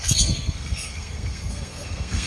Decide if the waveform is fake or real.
fake